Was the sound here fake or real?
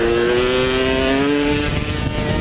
real